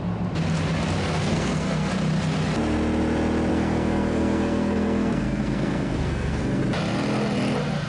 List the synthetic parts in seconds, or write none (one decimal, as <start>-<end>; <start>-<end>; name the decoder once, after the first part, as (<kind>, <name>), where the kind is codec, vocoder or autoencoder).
1.2-1.9 (codec, SNAC); 3.5-6.6